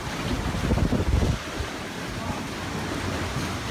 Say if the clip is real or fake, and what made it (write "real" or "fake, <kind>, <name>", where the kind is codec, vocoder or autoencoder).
real